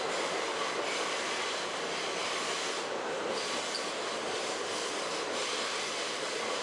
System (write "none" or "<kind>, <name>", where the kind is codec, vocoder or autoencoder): none